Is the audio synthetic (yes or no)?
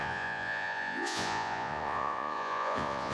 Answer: yes